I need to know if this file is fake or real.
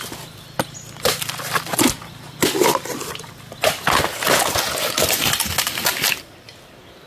real